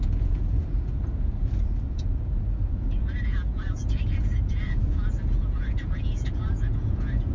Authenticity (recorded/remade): remade